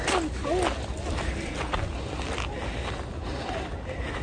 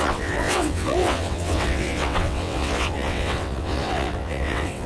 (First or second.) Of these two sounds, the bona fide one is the first